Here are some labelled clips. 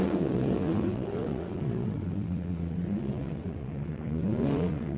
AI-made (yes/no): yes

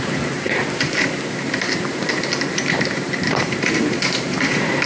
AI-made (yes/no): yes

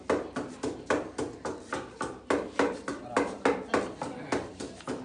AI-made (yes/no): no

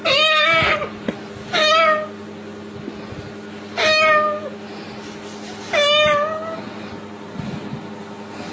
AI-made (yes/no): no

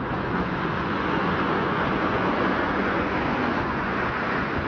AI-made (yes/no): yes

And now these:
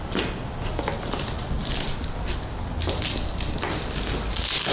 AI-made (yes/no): no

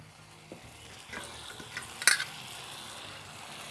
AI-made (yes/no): no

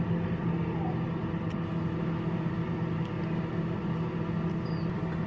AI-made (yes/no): no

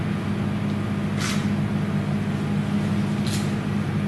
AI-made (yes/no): no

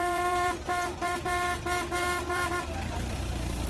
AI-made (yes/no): yes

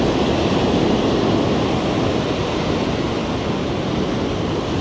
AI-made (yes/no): no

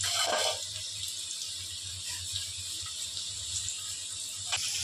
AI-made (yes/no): no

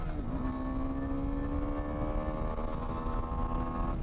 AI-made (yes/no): no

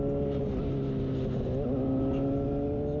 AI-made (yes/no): no